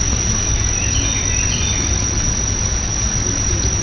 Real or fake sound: real